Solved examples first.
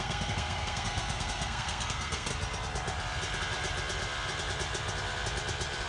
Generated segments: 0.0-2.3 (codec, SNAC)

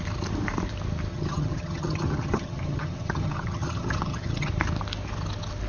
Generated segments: 1.1-4.5 (vocoder, HiFi-GAN)

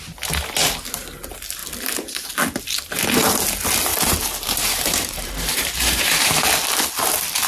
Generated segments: 3.9-6.4 (vocoder, BigVGAN v2)

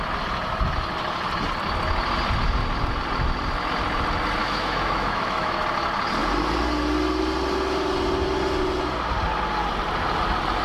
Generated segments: 4.4-5.6 (autoencoder, DAC-VAE)